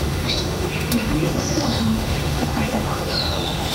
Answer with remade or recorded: remade